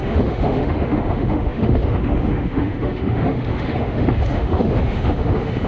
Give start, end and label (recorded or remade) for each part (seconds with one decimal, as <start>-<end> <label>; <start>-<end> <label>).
0.0-5.7 remade

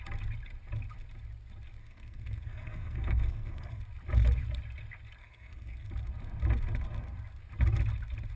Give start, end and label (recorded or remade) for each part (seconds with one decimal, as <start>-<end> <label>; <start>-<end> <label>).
0.0-1.8 recorded; 1.8-3.8 remade; 3.8-5.2 recorded; 5.2-5.9 remade; 5.9-8.4 recorded

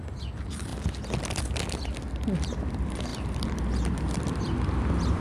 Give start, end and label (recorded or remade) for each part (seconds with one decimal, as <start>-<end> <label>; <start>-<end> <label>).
0.0-0.7 remade; 0.7-2.4 recorded; 2.4-5.2 remade

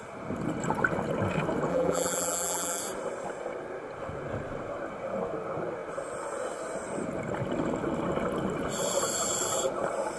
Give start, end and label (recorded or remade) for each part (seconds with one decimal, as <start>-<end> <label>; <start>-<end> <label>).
0.0-1.7 recorded; 1.7-2.8 remade; 2.8-10.2 recorded

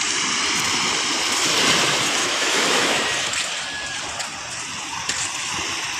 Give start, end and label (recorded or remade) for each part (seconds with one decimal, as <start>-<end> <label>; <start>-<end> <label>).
0.0-2.2 recorded; 2.2-3.0 remade; 3.0-6.0 recorded

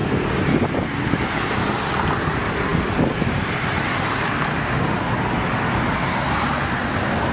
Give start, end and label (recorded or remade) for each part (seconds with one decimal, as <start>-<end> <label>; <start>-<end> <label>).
0.0-7.3 recorded

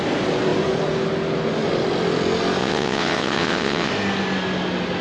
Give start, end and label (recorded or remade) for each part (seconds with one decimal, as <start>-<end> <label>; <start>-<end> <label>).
0.0-2.6 recorded; 2.6-3.9 remade; 3.9-5.0 recorded

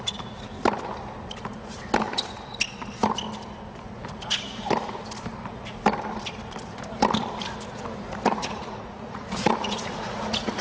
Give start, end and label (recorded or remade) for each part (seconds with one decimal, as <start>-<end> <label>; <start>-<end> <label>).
0.0-8.4 recorded; 8.4-10.6 remade